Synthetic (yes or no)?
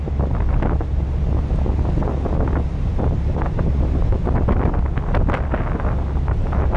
no